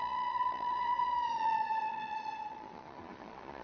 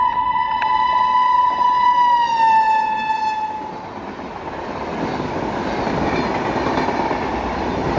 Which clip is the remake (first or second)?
first